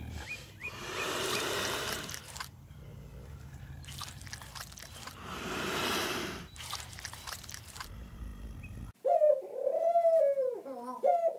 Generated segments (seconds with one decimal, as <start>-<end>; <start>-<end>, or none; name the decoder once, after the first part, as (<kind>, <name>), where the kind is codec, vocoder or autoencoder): 0.0-2.9 (vocoder, BigVGAN v2); 4.9-8.3; 9.0-11.4